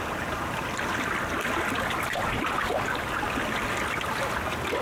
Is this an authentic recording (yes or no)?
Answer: yes